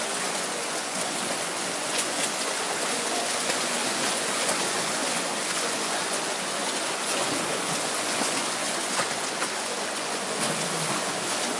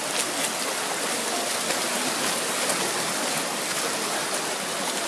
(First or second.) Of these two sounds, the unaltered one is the second